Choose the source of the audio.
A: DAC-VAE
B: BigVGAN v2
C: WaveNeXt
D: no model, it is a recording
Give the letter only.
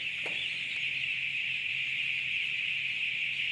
D